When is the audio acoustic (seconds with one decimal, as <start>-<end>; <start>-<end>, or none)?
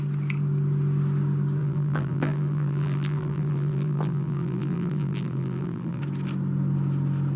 0.0-1.6; 6.0-7.4